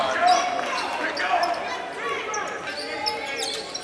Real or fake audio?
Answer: real